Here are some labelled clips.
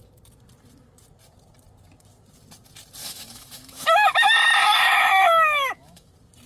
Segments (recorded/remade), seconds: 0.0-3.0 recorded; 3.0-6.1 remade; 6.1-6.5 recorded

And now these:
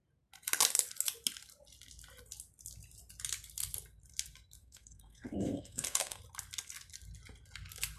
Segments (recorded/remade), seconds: 0.0-4.6 recorded; 4.6-6.2 remade; 6.2-8.0 recorded

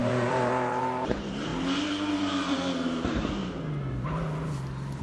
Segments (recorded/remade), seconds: 0.0-1.5 remade; 1.5-2.2 recorded; 2.2-3.4 remade; 3.4-5.0 recorded

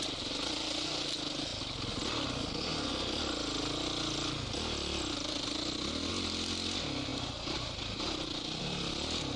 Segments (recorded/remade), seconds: 0.0-7.1 recorded; 7.1-8.6 remade; 8.6-9.4 recorded

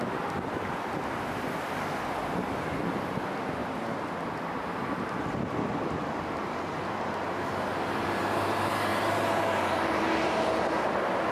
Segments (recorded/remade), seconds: 0.0-11.3 recorded

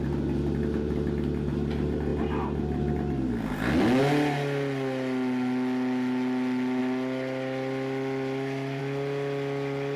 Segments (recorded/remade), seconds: 0.0-10.0 recorded